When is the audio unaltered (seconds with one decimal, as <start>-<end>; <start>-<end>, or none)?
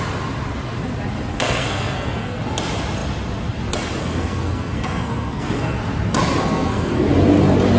0.0-1.3; 2.4-4.0; 5.8-6.4; 7.1-7.8